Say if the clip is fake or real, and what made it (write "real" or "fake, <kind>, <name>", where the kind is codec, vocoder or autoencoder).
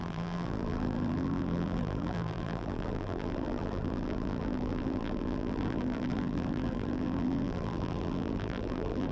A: fake, vocoder, BigVGAN v2